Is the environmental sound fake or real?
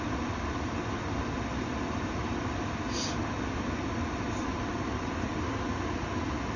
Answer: real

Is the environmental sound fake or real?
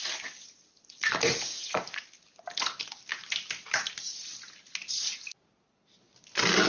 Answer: real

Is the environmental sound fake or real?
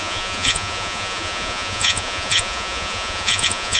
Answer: fake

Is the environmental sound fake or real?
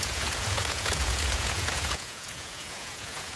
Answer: fake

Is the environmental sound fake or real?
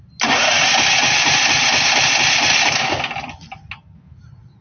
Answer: real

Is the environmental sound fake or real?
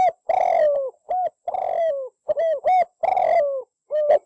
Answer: real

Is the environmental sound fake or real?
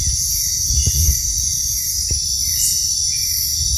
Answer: real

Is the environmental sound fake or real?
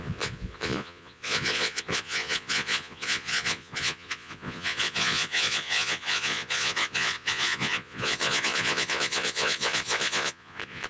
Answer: fake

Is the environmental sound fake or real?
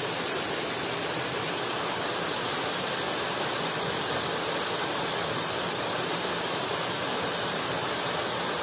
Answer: real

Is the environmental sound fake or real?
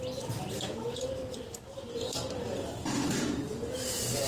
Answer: real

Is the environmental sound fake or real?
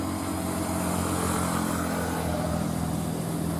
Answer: real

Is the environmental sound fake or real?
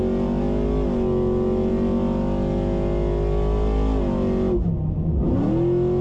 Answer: real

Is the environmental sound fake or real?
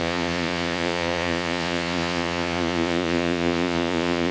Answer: fake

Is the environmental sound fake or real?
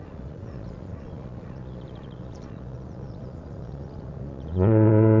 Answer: fake